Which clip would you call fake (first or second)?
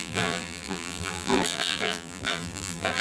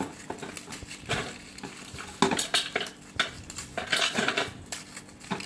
first